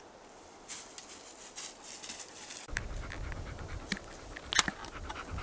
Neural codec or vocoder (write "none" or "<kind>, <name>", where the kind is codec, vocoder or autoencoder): none